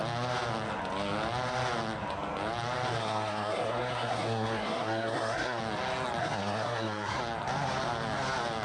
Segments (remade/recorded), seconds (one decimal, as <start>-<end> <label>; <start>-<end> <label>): 0.0-3.0 recorded; 3.0-5.6 remade; 5.6-6.2 recorded; 6.2-7.2 remade; 7.2-8.6 recorded

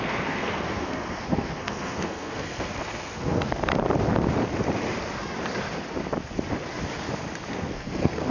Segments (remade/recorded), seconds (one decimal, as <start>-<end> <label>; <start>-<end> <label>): 0.0-3.7 remade; 3.7-7.5 recorded; 7.5-8.3 remade

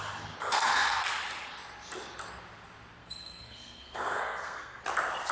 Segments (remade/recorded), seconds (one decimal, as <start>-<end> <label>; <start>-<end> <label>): 0.0-0.5 recorded; 0.5-1.0 remade; 1.0-3.0 recorded; 3.0-4.8 remade; 4.8-5.3 recorded

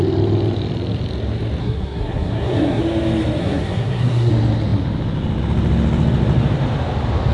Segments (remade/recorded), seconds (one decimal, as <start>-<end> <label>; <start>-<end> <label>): 0.0-1.6 recorded; 1.6-2.8 remade; 2.8-3.4 recorded; 3.4-4.3 remade; 4.3-7.3 recorded

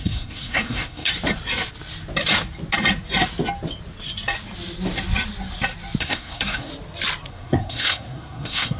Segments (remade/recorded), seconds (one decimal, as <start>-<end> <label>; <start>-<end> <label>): 0.0-1.1 remade; 1.1-6.0 recorded; 6.0-6.7 remade; 6.7-7.3 recorded; 7.3-8.8 remade

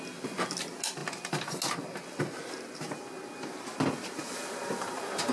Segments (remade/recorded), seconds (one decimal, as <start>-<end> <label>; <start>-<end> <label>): 0.0-5.3 recorded

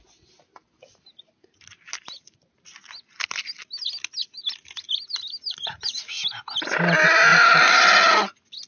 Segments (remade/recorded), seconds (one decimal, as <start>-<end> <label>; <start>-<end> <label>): 0.0-8.7 recorded

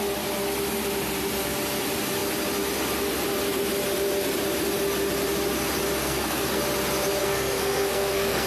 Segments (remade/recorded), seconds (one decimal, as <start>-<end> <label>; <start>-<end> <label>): 0.0-6.0 recorded; 6.0-6.6 remade; 6.6-7.2 recorded; 7.2-8.5 remade